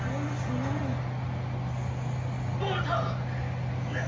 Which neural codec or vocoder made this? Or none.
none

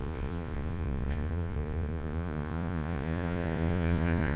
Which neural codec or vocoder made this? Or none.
vocoder, Vocos